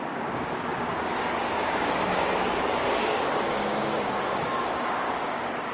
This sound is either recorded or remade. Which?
remade